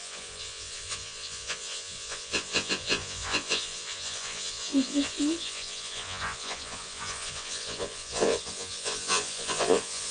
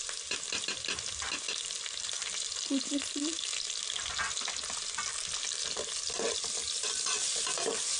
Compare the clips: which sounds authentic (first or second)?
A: second